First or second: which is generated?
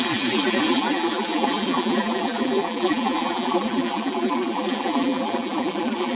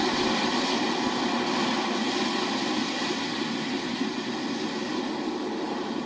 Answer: first